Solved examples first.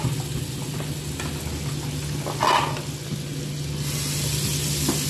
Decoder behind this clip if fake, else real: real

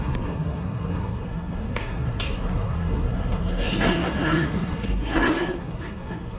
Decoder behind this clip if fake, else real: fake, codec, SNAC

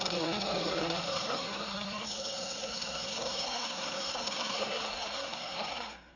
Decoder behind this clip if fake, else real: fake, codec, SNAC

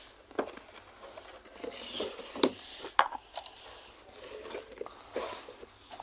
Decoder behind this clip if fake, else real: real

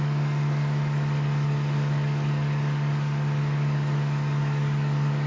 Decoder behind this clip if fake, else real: fake, codec, DAC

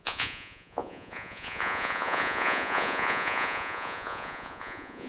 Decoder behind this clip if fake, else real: fake, vocoder, Vocos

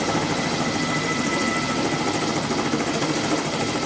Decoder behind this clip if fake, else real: fake, vocoder, BigVGAN v2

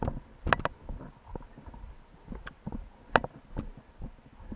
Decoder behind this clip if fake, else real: real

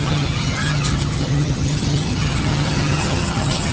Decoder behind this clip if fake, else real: fake, vocoder, HiFi-GAN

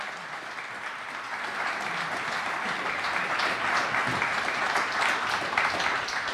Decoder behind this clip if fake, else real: real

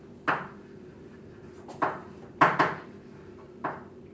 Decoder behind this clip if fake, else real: real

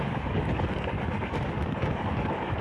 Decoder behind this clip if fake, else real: fake, codec, DAC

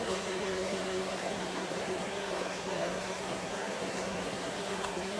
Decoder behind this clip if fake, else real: fake, codec, SNAC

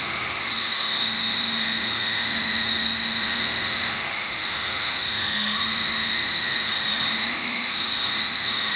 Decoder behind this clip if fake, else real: fake, autoencoder, DAC-VAE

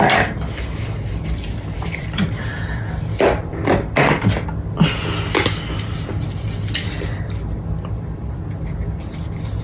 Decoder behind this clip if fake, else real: real